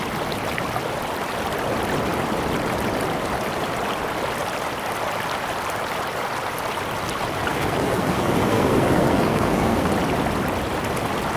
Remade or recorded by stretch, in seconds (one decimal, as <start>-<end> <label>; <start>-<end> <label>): 0.0-7.5 recorded; 7.5-9.9 remade; 9.9-11.4 recorded